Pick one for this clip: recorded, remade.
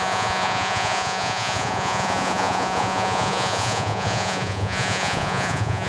remade